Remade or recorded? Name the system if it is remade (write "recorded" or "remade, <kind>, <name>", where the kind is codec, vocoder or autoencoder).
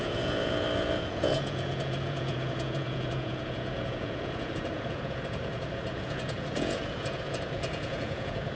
remade, vocoder, Vocos